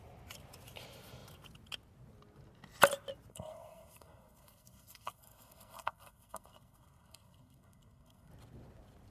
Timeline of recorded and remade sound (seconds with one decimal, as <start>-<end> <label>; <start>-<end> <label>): 0.0-3.3 recorded; 3.3-8.3 remade; 8.3-9.1 recorded